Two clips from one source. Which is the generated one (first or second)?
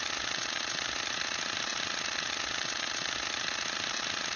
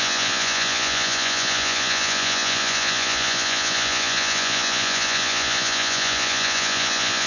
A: second